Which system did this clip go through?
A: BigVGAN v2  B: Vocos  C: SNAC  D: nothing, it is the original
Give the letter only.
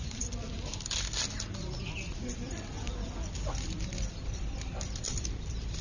A